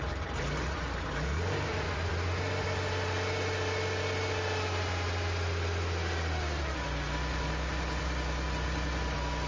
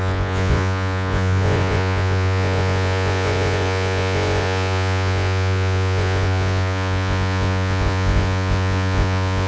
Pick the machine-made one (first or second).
second